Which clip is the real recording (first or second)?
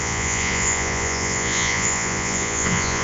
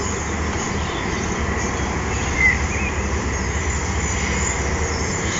second